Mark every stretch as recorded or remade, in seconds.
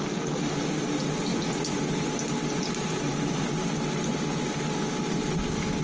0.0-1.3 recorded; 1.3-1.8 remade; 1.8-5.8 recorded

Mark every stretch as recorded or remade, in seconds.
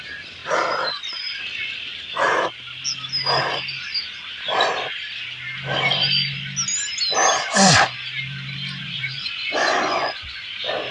0.0-8.8 recorded; 8.8-10.4 remade; 10.4-10.9 recorded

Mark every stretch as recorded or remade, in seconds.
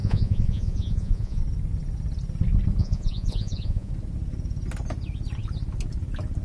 0.0-1.4 remade; 1.4-2.8 recorded; 2.8-3.9 remade; 3.9-6.4 recorded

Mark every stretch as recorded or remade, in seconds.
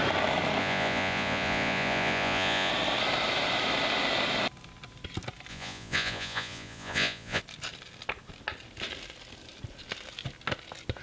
0.0-0.6 recorded; 0.6-2.7 remade; 2.7-5.5 recorded; 5.5-7.4 remade; 7.4-11.0 recorded